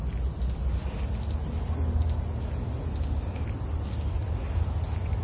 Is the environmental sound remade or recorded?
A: recorded